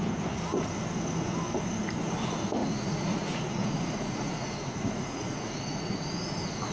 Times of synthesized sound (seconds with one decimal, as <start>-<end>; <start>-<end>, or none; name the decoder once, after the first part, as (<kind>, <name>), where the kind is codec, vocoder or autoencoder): 2.6-6.3 (vocoder, Vocos)